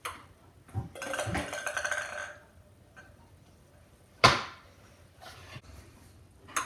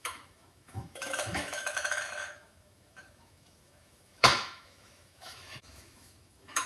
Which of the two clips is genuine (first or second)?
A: first